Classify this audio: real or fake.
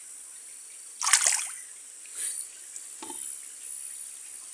real